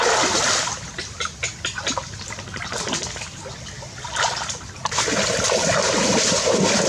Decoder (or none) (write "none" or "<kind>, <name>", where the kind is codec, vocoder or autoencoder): none